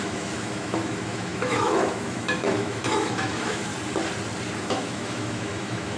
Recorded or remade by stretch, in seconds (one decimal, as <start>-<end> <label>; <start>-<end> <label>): 0.0-3.7 remade; 3.7-4.6 recorded; 4.6-6.0 remade